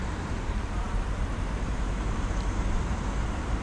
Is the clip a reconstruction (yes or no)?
yes